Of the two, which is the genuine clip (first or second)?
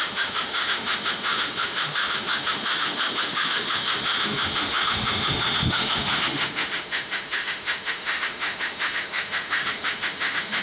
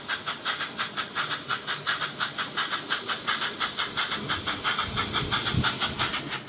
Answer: second